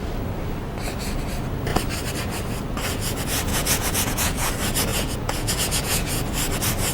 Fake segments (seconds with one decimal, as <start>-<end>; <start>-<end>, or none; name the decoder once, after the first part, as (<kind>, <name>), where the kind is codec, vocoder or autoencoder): 3.5-4.5 (vocoder, Vocos); 4.9-6.1